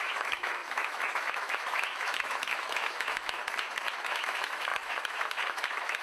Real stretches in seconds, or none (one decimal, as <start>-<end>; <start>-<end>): 3.4-4.0